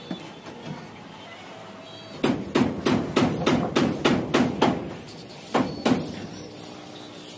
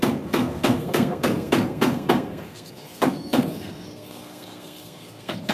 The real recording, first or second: first